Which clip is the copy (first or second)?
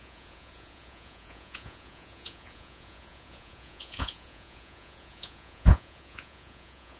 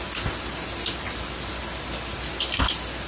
first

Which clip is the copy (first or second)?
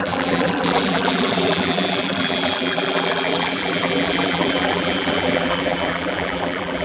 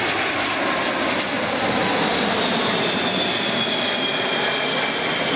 first